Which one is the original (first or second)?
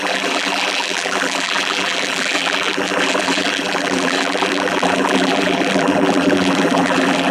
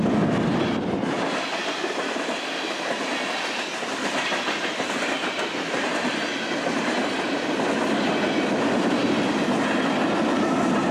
second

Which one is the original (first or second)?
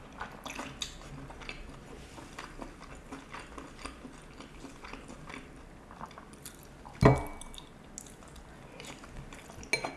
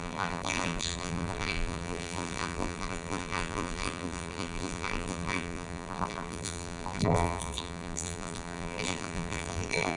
first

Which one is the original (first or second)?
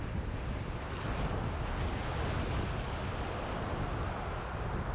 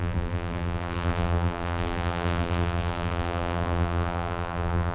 first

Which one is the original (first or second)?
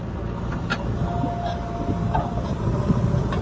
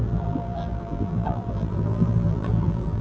first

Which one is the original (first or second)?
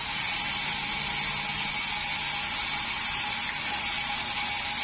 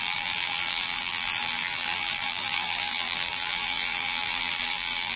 first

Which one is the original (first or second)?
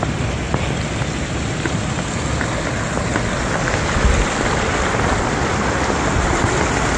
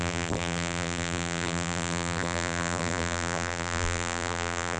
first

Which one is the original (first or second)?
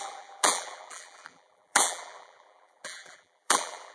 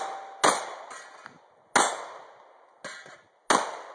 second